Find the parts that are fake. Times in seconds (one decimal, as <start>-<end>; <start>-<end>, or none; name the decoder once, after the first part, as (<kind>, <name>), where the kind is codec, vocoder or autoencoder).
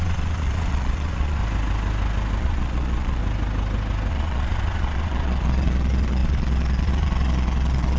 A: 0.0-1.4 (vocoder, Vocos); 2.4-3.2; 4.1-8.0